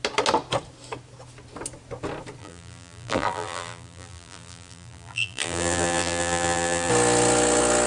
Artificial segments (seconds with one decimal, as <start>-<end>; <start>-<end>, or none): 2.4-6.9